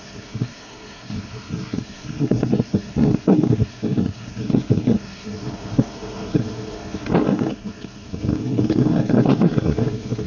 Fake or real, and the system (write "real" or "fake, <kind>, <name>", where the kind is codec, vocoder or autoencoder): fake, codec, SNAC